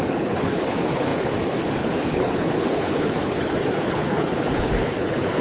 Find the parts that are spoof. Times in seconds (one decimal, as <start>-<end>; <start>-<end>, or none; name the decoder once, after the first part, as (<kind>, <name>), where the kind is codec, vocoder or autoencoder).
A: 0.0-5.4 (codec, HILCodec)